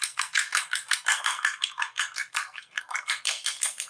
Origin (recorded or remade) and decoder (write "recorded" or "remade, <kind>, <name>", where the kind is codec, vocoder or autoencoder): remade, codec, SNAC